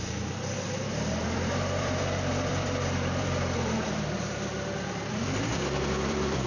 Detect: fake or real fake